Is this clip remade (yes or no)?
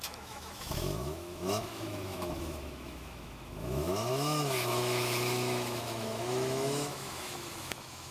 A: yes